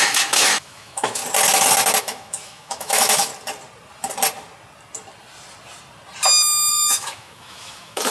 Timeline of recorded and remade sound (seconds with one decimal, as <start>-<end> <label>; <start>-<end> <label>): 0.0-1.2 remade; 1.2-2.0 recorded; 2.0-3.3 remade; 3.3-6.7 recorded; 6.7-8.1 remade